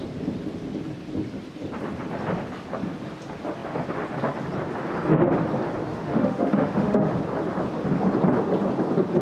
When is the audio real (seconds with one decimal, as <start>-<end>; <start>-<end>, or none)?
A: 0.0-5.9; 7.1-9.2